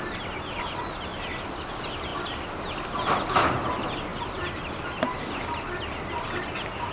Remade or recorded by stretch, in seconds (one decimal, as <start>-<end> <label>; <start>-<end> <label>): 0.0-1.1 recorded; 1.1-1.7 remade; 1.7-4.1 recorded; 4.1-4.8 remade; 4.8-6.9 recorded